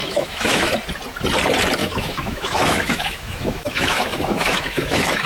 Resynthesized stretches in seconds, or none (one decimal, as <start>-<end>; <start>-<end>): 0.0-0.7; 1.8-5.3